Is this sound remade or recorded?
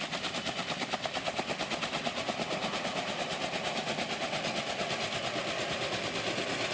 recorded